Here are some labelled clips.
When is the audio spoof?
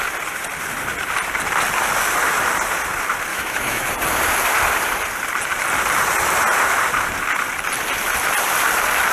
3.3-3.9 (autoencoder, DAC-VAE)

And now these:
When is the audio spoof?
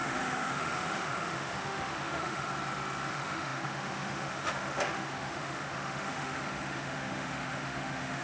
0.0-2.5 (autoencoder, DAC-VAE); 3.1-8.2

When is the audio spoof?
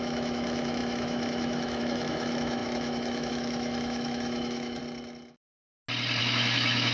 0.0-4.8 (autoencoder, DAC-VAE); 6.2-6.9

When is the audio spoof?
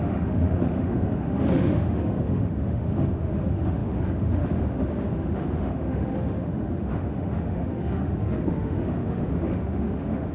0.0-10.3 (autoencoder, DAC-VAE)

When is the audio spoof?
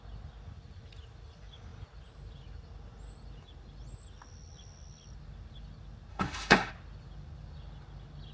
6.1-6.7 (autoencoder, DAC-VAE)